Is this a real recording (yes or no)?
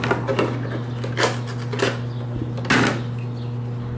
yes